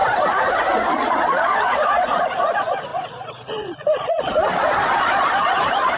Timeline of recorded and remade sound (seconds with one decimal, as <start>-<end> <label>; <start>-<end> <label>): 0.0-0.9 recorded; 0.9-6.0 remade